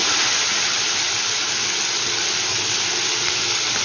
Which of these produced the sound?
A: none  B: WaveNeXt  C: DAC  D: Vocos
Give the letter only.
A